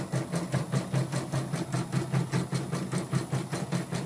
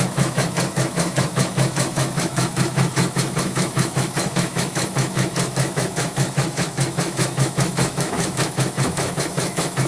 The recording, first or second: first